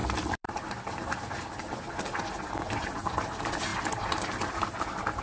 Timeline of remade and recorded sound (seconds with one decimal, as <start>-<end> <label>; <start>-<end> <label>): 0.0-3.1 remade; 3.1-5.2 recorded